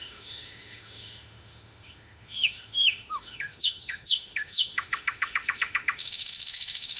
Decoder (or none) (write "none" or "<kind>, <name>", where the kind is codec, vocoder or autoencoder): autoencoder, DAC-VAE